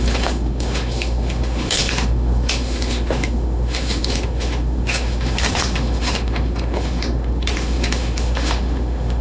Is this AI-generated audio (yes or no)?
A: yes